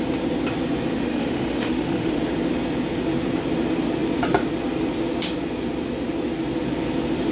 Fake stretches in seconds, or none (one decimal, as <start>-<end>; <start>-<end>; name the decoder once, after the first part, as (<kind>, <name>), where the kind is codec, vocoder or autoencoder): 1.0-2.2 (autoencoder, DAC-VAE)